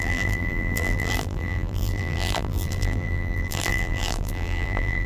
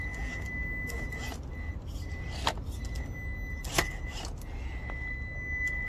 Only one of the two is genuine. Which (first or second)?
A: second